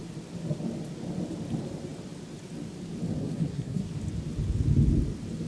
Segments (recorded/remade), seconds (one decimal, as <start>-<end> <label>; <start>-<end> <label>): 0.0-3.2 recorded; 3.2-3.9 remade; 3.9-5.5 recorded